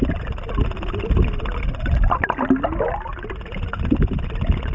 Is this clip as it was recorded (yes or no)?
yes